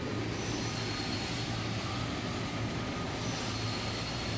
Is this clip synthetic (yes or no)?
no